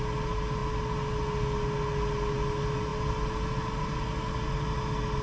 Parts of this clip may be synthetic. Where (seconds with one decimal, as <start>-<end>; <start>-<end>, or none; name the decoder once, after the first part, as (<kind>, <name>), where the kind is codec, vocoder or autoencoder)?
none